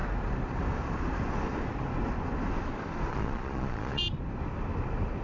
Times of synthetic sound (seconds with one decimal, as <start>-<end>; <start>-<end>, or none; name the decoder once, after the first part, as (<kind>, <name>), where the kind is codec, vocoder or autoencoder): 3.1-4.0 (vocoder, Vocos)